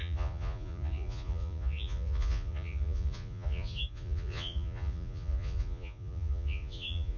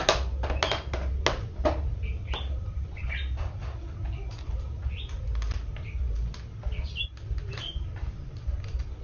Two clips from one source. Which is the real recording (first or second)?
second